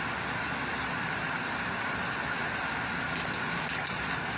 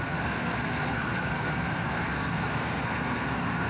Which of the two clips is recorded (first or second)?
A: first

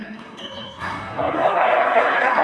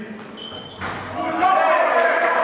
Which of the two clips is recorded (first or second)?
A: second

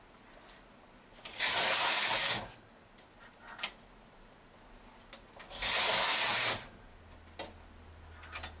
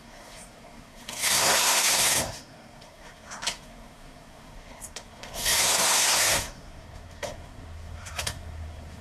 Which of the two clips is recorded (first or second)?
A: first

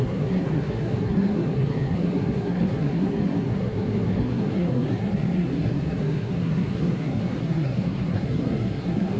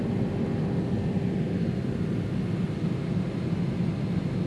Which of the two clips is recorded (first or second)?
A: second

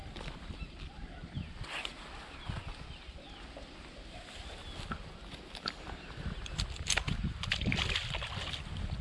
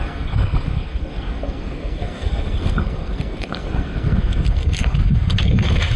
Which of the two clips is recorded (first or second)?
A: first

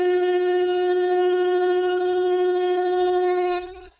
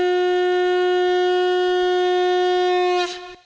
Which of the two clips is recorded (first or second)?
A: second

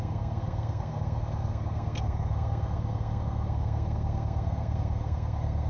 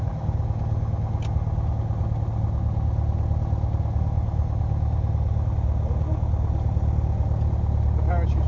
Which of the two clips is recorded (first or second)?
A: second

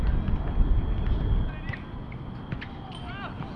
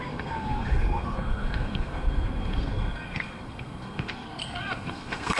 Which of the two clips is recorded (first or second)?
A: first